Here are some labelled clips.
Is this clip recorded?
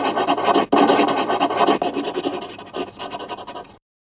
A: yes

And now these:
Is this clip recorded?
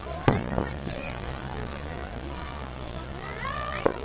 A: no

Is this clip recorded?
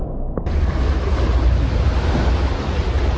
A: yes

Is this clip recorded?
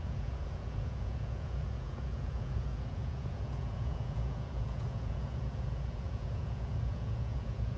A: no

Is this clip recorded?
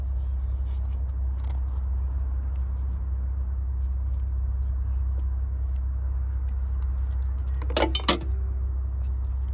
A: yes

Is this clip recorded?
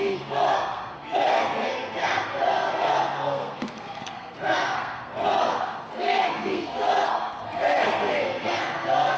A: no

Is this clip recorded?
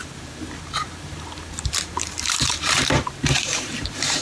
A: no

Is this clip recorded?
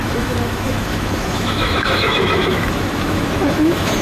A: no